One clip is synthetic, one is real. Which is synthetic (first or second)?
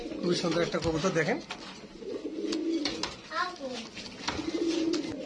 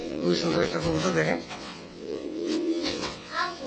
second